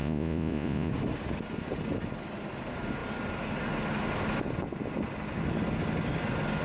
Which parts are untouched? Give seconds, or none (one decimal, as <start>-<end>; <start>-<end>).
0.9-6.6